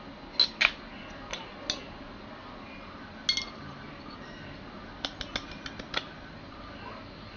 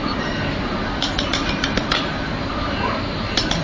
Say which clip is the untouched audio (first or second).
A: first